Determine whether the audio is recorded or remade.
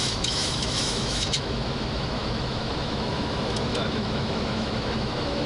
remade